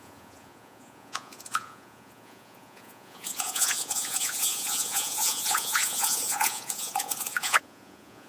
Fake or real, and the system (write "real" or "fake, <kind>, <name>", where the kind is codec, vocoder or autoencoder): fake, vocoder, Vocos